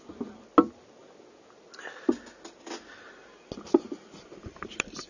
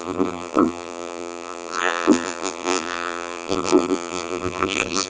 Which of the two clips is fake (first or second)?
second